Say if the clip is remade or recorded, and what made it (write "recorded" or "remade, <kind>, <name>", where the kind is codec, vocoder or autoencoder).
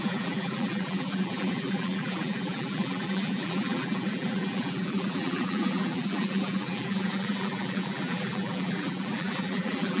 remade, vocoder, BigVGAN v2